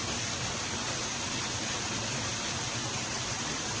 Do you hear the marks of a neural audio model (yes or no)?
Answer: no